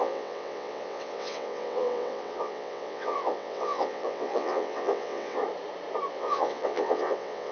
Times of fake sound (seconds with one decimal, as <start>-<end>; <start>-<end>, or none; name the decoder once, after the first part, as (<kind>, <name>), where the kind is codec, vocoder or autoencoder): 0.0-5.4 (vocoder, WaveNeXt); 6.1-7.5